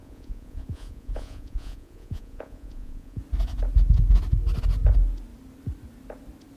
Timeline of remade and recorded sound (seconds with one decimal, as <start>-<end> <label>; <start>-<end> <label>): 0.0-3.2 remade; 3.2-6.6 recorded